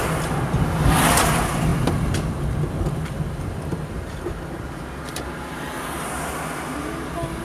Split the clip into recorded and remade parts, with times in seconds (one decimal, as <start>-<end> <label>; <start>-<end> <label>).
0.0-7.4 recorded

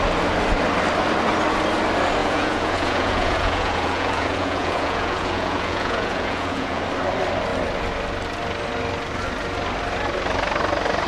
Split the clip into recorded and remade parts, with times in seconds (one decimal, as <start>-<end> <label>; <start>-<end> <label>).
0.0-2.2 recorded; 2.2-6.8 remade; 6.8-11.1 recorded

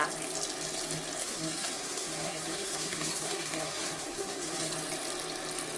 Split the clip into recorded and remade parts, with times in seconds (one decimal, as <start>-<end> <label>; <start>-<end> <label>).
0.0-1.2 recorded; 1.2-4.7 remade; 4.7-5.8 recorded

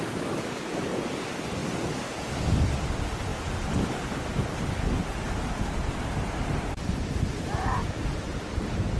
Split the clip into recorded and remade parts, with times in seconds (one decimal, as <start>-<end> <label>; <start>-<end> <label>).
0.0-9.0 recorded